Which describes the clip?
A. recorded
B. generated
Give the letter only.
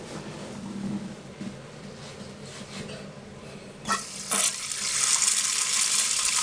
A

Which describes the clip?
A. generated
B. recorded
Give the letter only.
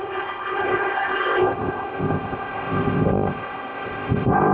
A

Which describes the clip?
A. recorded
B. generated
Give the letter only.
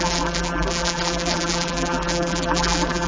B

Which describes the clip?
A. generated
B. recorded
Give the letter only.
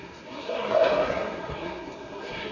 A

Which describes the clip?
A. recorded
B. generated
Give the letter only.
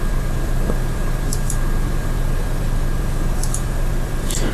B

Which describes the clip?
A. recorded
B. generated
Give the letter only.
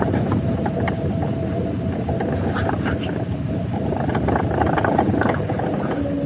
A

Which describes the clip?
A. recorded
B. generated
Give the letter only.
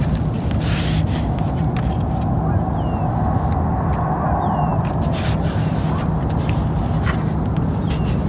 A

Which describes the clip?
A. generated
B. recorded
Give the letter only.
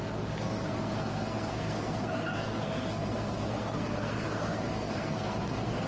A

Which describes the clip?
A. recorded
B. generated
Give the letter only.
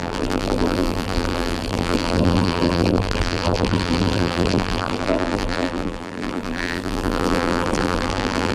B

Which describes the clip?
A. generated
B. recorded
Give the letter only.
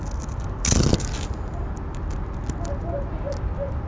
B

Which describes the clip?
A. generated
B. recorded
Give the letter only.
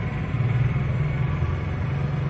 A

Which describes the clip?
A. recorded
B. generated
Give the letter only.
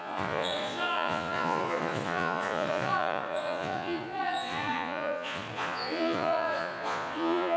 B